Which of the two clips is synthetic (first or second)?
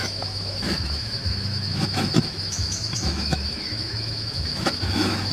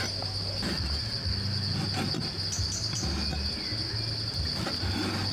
first